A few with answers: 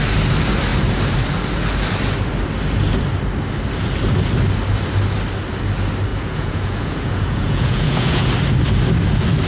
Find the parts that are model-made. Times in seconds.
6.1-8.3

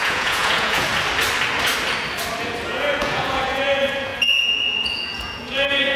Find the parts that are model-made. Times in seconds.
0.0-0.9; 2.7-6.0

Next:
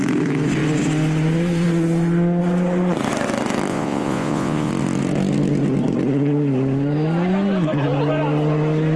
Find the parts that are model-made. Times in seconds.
3.7-4.7

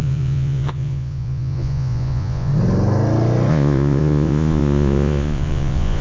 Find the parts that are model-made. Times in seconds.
0.0-2.5; 3.5-6.0